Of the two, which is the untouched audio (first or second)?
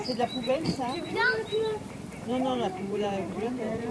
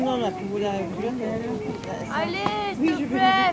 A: second